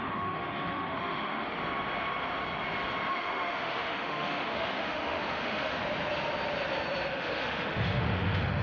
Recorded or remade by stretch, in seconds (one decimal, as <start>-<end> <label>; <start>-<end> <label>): 0.0-1.6 remade; 1.6-3.1 recorded; 3.1-5.8 remade; 5.8-7.1 recorded; 7.1-8.6 remade